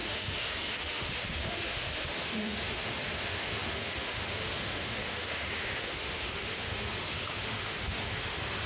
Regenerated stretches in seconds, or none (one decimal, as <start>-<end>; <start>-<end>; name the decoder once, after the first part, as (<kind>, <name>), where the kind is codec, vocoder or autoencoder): 0.0-8.7 (autoencoder, DAC-VAE)